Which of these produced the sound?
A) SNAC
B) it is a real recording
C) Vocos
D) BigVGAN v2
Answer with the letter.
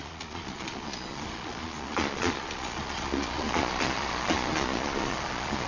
C